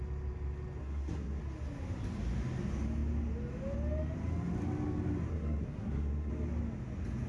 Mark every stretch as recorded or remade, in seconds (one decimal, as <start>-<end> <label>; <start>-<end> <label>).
0.0-0.8 recorded; 0.8-1.4 remade; 1.4-5.3 recorded; 5.3-6.3 remade; 6.3-7.3 recorded